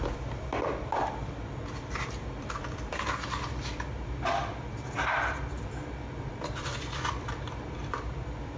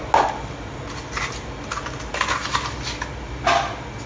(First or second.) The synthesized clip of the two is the first